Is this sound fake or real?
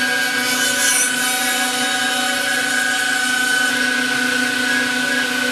real